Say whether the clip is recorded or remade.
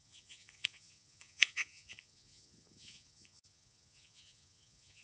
remade